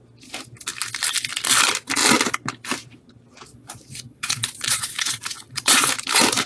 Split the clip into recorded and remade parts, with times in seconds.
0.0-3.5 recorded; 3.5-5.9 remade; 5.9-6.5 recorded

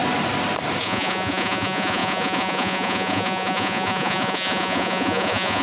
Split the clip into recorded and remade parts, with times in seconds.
0.0-0.8 recorded; 0.8-5.6 remade

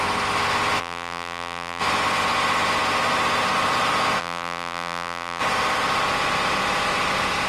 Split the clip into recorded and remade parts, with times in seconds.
0.0-0.8 recorded; 0.8-1.8 remade; 1.8-4.2 recorded; 4.2-5.4 remade; 5.4-7.5 recorded

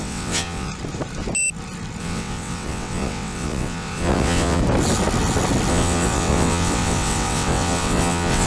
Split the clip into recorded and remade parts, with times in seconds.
0.0-0.7 remade; 0.7-2.0 recorded; 2.0-4.6 remade; 4.6-5.7 recorded; 5.7-8.5 remade

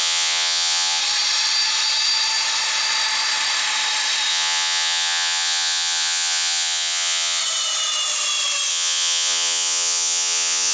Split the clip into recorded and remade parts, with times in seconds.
0.0-1.0 remade; 1.0-4.3 recorded; 4.3-7.4 remade; 7.4-8.7 recorded; 8.7-10.7 remade